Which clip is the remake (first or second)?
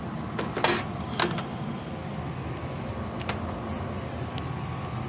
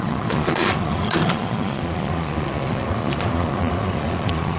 second